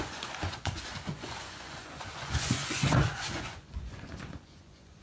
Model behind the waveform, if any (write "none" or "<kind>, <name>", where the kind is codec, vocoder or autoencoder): vocoder, Vocos